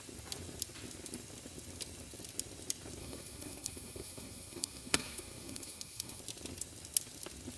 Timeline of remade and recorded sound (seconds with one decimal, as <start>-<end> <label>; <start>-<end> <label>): 0.0-3.0 recorded; 3.0-6.2 remade; 6.2-7.6 recorded